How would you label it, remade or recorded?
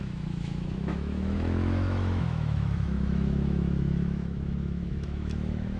remade